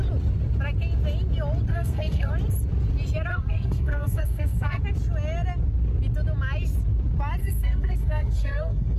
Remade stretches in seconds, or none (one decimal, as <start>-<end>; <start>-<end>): 1.7-2.3; 3.3-4.8; 7.4-9.0